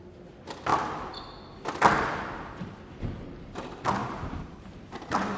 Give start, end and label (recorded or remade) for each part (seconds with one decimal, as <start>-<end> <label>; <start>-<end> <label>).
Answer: 0.0-4.0 recorded; 4.0-5.4 remade